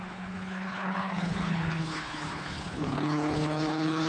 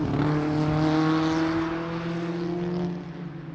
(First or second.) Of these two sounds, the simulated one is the first